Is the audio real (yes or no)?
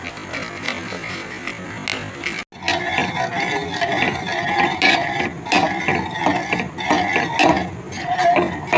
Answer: yes